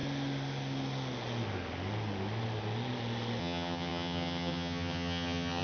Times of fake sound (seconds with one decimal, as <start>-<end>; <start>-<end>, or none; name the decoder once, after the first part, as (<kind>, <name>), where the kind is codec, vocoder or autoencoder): 3.4-5.6 (vocoder, HiFi-GAN)

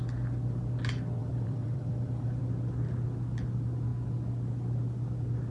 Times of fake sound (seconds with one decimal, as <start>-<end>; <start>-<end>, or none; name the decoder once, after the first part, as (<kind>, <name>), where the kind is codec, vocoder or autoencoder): 1.2-2.4 (vocoder, BigVGAN v2)